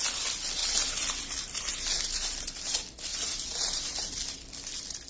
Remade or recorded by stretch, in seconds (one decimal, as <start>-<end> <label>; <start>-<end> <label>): 0.0-3.1 recorded; 3.1-4.1 remade; 4.1-5.1 recorded